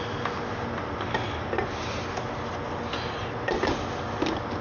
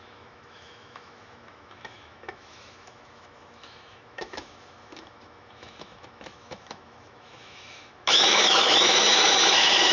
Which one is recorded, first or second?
first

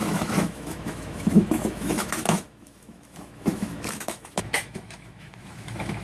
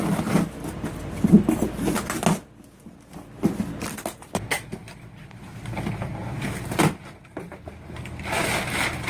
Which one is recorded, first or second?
second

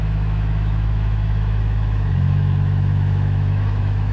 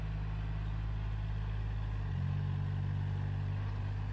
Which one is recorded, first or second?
second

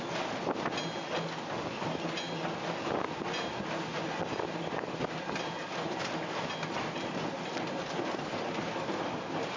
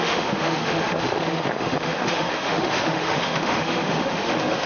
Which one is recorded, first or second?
first